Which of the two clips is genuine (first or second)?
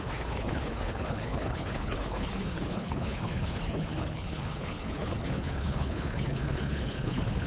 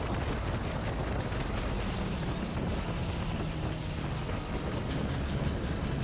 second